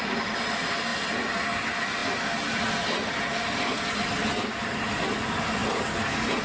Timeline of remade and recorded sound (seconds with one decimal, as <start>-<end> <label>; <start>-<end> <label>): 0.0-6.4 recorded